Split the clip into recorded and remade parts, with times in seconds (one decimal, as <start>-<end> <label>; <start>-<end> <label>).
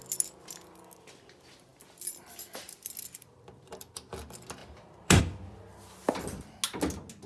0.0-1.7 recorded; 1.7-4.0 remade; 4.0-4.6 recorded; 4.6-5.2 remade; 5.2-7.3 recorded